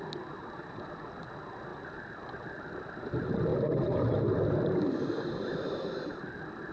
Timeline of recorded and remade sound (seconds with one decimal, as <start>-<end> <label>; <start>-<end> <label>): 0.0-6.7 recorded